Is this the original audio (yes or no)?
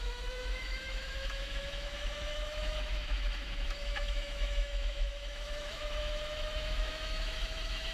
no